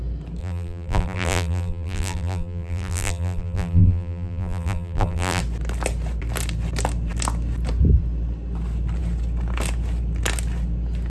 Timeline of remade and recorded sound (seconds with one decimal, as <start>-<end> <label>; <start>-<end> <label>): 0.0-0.4 recorded; 0.4-5.4 remade; 5.4-11.1 recorded